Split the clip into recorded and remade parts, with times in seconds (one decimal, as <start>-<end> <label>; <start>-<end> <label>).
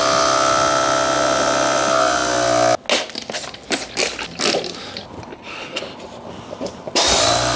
0.0-5.3 recorded; 5.3-5.8 remade; 5.8-7.6 recorded